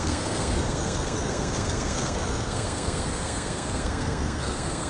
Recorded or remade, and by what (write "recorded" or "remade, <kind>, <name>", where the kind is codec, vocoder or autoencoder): remade, codec, SNAC